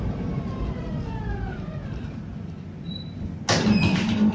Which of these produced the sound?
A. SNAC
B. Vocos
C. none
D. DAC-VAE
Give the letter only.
C